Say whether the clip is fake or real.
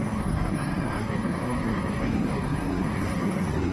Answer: fake